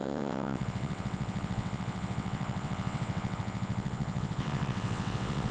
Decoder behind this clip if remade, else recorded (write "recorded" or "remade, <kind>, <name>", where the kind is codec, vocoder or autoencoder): remade, vocoder, WaveNeXt